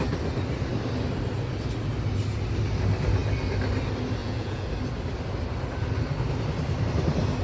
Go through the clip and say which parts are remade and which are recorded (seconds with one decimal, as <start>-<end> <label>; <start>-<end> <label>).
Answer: 0.0-4.2 recorded; 4.2-4.7 remade; 4.7-7.4 recorded